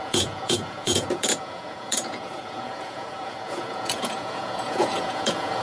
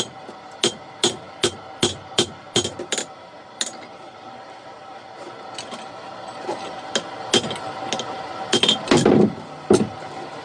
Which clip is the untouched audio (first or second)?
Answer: second